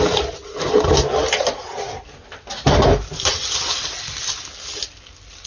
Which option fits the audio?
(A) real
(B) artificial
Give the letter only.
A